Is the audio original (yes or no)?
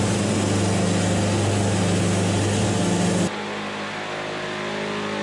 yes